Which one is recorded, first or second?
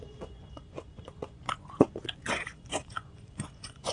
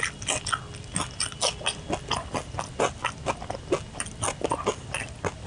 second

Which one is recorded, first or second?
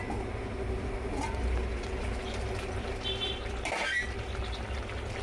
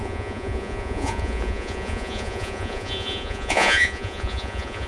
first